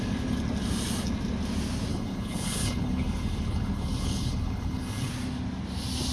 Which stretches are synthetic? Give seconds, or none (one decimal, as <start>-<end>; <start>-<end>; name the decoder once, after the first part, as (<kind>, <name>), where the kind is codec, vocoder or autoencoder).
1.9-5.1 (codec, HILCodec)